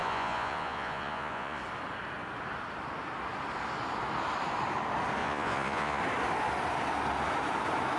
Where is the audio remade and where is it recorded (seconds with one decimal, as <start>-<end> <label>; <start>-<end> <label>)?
0.0-1.6 remade; 1.6-5.2 recorded; 5.2-6.0 remade; 6.0-8.0 recorded

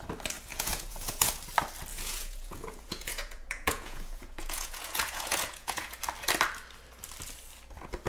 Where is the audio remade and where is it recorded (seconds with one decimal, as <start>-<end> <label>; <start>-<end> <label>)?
0.0-0.5 recorded; 0.5-1.3 remade; 1.3-1.9 recorded; 1.9-6.0 remade; 6.0-8.1 recorded

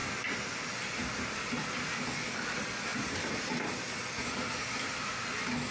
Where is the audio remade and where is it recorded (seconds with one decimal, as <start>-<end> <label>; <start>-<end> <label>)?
0.0-5.7 recorded

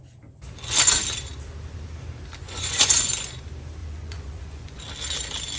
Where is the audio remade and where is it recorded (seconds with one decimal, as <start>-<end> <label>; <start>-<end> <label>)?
0.0-2.4 recorded; 2.4-3.1 remade; 3.1-3.8 recorded; 3.8-4.8 remade; 4.8-5.6 recorded